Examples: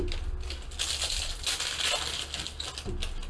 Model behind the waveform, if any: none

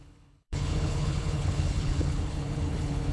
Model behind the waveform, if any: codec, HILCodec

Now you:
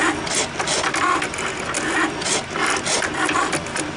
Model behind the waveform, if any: none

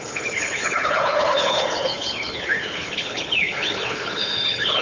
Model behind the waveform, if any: codec, HILCodec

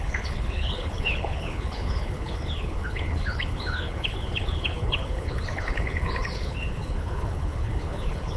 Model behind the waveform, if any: codec, HILCodec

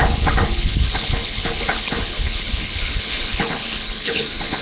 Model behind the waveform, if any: codec, HILCodec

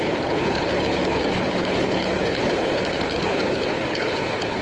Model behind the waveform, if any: codec, HILCodec